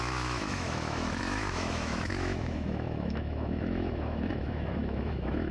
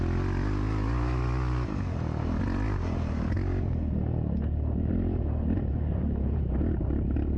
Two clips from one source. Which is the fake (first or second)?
first